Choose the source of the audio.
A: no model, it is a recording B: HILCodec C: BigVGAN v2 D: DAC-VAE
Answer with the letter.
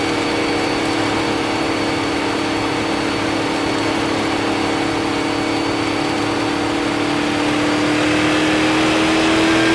A